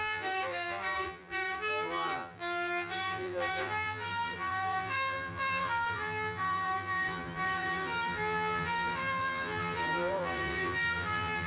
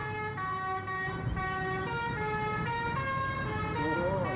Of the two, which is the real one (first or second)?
second